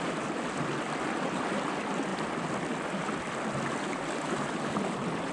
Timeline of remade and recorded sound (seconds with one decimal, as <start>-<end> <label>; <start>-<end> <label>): 0.0-5.3 recorded